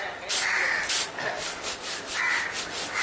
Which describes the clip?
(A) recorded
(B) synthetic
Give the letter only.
A